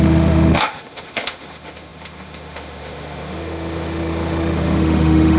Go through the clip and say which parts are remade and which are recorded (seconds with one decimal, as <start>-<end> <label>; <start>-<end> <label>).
0.0-5.4 remade